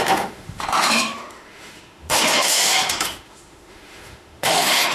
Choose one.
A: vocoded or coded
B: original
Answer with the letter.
A